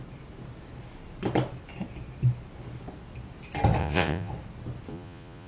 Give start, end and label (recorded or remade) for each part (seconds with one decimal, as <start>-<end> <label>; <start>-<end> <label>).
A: 0.0-3.8 recorded; 3.8-4.3 remade; 4.3-4.9 recorded; 4.9-5.5 remade